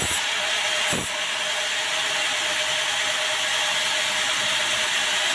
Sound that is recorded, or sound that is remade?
recorded